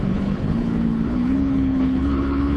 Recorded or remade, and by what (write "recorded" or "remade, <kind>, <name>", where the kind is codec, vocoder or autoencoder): remade, codec, HILCodec